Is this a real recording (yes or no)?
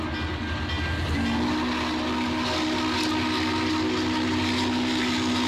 yes